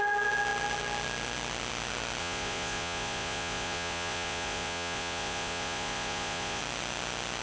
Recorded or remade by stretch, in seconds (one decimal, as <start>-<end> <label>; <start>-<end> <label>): 0.0-2.2 recorded; 2.2-6.6 remade; 6.6-7.4 recorded

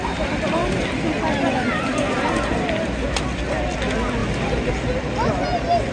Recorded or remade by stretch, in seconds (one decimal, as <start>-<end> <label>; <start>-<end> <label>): 0.0-5.9 recorded

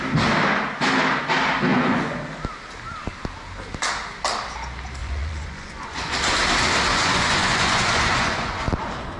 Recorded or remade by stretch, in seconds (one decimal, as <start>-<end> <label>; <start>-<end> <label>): 0.0-1.7 recorded; 1.7-2.2 remade; 2.2-5.0 recorded; 5.0-6.1 remade; 6.1-6.9 recorded; 6.9-8.7 remade; 8.7-9.2 recorded

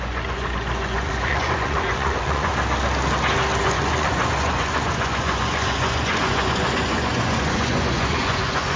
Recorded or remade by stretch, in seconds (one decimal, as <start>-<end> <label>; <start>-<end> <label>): 0.0-2.5 remade; 2.5-3.6 recorded; 3.6-8.8 remade

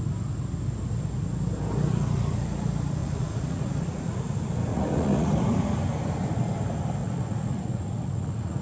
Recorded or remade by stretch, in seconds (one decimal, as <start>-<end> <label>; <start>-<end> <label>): 0.0-3.0 recorded; 3.0-4.2 remade; 4.2-4.7 recorded; 4.7-5.3 remade; 5.3-7.0 recorded; 7.0-8.6 remade

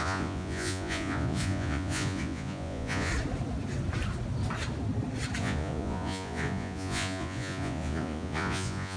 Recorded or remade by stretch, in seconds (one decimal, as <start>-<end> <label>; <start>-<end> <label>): 0.0-3.1 remade; 3.1-5.4 recorded; 5.4-9.0 remade

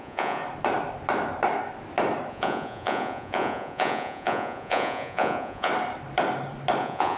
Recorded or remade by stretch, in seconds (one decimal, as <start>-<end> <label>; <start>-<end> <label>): 0.0-0.4 remade; 0.4-2.3 recorded; 2.3-5.7 remade; 5.7-6.8 recorded; 6.8-7.2 remade

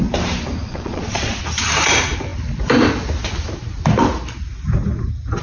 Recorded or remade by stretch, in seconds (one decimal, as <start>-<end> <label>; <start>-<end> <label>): 0.0-0.6 recorded; 0.6-1.4 remade; 1.4-5.4 recorded